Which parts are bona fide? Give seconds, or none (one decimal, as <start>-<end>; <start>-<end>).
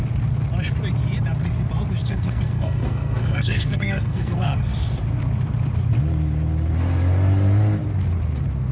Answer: 0.0-2.0; 4.9-8.7